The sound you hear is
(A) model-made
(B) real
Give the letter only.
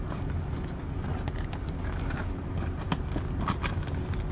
B